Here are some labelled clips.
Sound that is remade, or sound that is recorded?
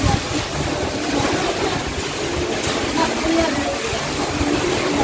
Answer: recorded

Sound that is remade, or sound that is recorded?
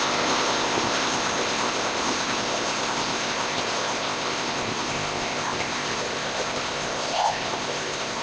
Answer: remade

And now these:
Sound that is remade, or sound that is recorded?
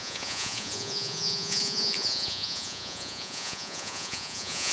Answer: remade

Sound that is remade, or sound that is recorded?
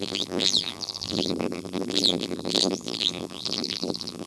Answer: remade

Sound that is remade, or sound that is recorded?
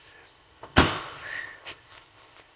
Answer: remade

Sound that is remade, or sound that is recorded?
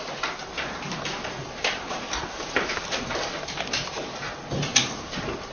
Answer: recorded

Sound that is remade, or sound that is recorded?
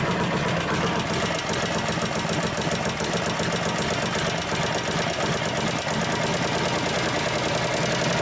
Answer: recorded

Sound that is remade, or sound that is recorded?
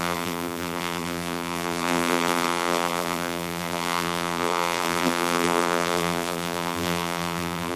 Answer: remade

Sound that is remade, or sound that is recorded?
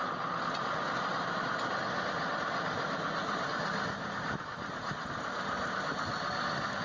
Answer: recorded